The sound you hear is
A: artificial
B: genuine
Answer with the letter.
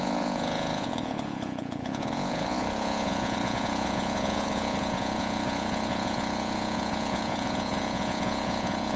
A